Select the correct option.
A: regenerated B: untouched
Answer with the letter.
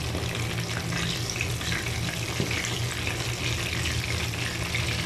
B